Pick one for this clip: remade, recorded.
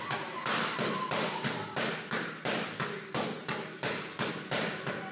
recorded